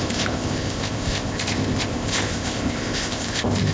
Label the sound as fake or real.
fake